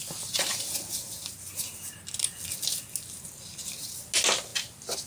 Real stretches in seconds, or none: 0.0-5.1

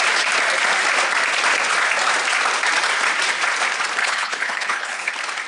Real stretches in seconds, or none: 0.0-4.0; 5.1-5.5

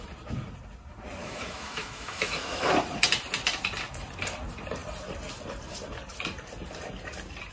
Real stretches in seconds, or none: 0.0-1.2; 2.7-7.5